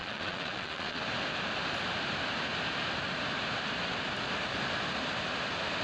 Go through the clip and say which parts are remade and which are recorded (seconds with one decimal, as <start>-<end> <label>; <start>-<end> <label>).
0.0-1.0 remade; 1.0-5.8 recorded